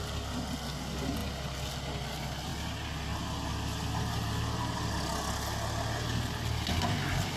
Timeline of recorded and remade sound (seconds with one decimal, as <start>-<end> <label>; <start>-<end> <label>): 0.0-7.4 recorded